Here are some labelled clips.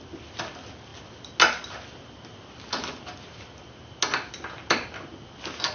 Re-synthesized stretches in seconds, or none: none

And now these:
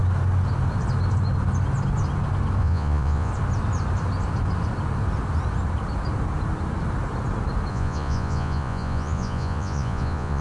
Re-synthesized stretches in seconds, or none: 2.6-3.3; 7.7-10.4